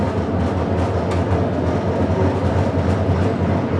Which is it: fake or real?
real